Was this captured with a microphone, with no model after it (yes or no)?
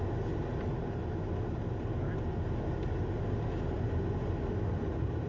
yes